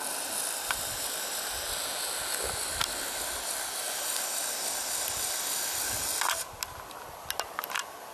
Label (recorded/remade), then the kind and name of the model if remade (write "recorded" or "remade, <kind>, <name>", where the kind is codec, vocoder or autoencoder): recorded